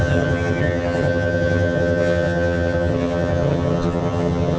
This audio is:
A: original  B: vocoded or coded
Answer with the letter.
B